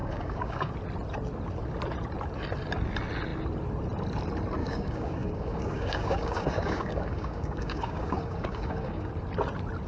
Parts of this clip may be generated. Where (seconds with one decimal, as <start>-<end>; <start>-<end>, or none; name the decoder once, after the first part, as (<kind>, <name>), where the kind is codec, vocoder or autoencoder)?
0.0-0.7 (codec, DAC); 4.6-9.1